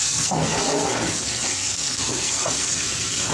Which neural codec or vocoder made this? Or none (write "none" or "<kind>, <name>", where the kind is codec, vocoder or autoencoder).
codec, SNAC